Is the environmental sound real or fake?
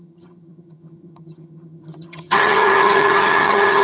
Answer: fake